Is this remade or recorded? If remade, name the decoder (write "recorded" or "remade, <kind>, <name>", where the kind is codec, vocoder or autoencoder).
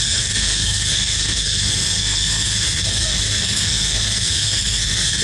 remade, codec, SNAC